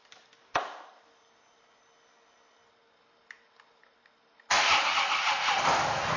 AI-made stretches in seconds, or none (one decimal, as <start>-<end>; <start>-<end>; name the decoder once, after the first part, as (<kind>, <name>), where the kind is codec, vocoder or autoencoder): 0.0-2.5 (vocoder, BigVGAN v2)

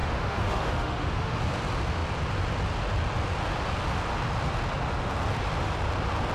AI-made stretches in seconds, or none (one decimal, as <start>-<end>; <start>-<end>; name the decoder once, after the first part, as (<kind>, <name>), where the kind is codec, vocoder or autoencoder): 0.0-1.4 (autoencoder, DAC-VAE)

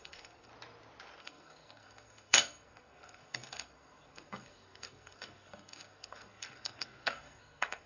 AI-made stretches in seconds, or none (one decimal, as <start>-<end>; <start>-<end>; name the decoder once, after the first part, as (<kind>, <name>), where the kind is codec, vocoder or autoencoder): 0.0-0.5 (codec, SNAC); 1.2-7.9

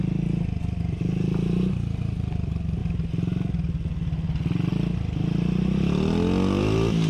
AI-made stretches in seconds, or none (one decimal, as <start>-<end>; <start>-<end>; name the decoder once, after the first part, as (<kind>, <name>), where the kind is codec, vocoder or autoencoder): none